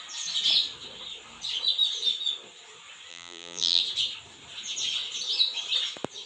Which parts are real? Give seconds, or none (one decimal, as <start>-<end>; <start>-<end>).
0.0-3.1; 3.8-6.3